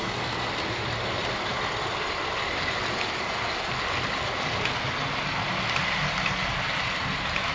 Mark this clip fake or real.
real